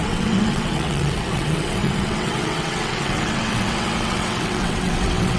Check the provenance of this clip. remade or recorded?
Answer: remade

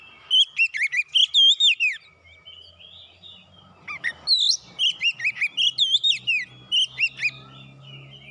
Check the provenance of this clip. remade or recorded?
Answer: recorded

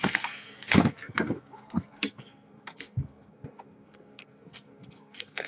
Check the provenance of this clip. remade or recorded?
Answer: remade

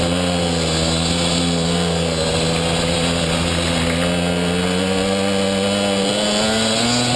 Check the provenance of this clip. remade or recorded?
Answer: recorded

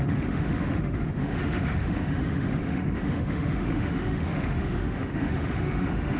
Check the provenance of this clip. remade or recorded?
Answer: remade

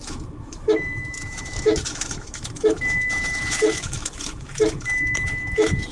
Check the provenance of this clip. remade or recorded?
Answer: remade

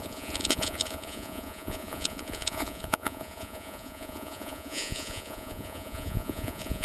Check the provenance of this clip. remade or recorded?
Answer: remade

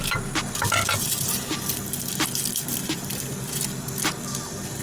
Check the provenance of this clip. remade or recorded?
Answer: recorded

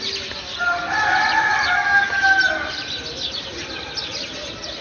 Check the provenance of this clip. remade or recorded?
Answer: recorded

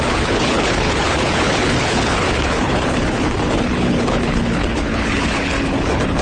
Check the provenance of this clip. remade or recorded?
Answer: remade